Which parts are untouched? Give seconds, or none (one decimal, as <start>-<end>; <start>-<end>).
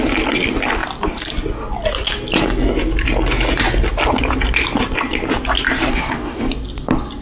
0.0-5.9; 6.5-7.2